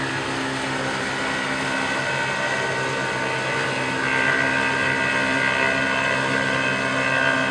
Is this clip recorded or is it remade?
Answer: recorded